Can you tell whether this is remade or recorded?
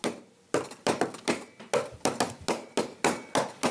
recorded